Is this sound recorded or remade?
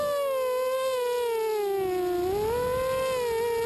recorded